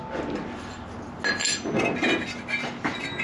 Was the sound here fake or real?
real